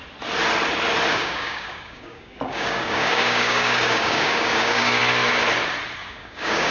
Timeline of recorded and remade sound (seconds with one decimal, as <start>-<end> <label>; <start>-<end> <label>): 0.0-1.1 recorded; 1.1-5.0 remade; 5.0-6.0 recorded; 6.0-6.7 remade